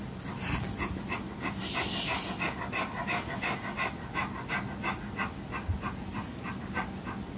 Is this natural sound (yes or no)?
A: yes